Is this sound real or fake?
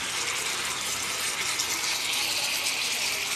real